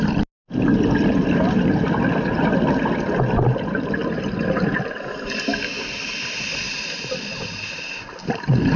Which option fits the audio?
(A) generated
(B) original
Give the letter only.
B